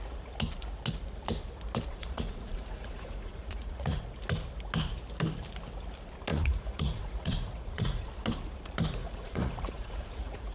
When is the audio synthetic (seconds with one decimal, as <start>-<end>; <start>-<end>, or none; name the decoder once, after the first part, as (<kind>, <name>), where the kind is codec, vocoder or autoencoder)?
1.9-4.0 (vocoder, Vocos); 6.3-8.1; 9.0-10.5